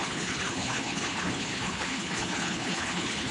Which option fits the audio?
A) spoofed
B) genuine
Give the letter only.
A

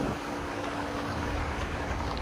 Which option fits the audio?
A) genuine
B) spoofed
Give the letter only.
B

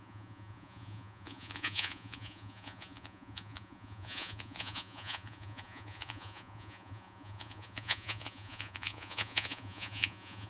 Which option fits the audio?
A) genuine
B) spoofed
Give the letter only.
B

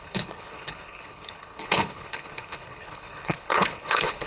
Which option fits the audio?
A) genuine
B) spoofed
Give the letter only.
B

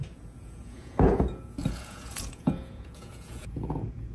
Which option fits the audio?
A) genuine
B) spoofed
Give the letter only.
B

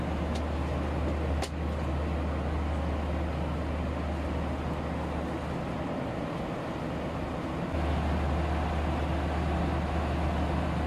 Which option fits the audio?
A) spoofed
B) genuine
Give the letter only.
B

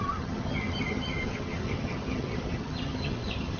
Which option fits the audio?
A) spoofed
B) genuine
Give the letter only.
A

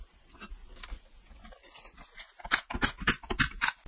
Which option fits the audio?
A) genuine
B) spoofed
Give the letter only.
A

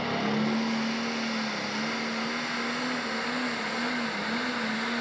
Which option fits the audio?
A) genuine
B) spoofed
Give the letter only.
A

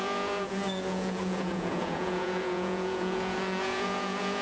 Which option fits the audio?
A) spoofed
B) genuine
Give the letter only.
A